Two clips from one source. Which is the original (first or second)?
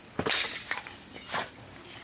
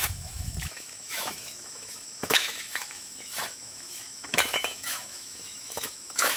first